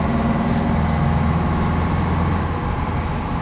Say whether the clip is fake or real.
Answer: real